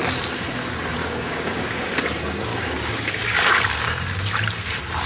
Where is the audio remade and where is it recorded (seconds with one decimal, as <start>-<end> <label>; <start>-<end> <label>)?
0.0-1.0 recorded; 1.0-1.9 remade; 1.9-2.5 recorded; 2.5-3.6 remade; 3.6-5.1 recorded